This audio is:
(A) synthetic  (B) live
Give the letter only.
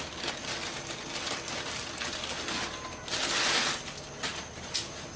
B